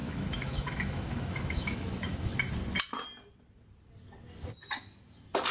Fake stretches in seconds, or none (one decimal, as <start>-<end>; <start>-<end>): 0.0-2.5

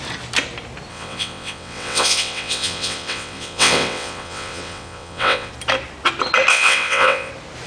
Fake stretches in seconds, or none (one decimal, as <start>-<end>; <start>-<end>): 0.9-5.5; 6.5-7.3

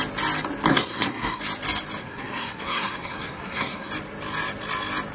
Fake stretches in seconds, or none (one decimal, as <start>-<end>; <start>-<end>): 0.7-1.4; 2.0-3.9

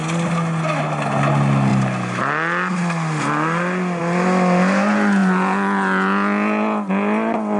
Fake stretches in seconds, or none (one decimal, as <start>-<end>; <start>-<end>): none

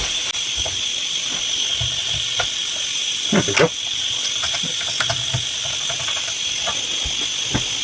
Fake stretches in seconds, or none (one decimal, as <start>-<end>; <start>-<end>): none

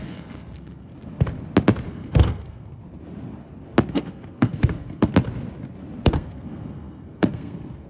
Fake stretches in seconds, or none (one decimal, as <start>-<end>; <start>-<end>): 0.0-0.9; 1.9-2.8; 3.9-5.1; 6.1-7.9

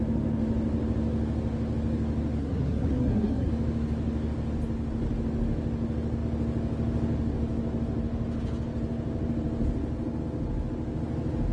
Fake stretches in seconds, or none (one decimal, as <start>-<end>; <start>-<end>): 2.4-3.5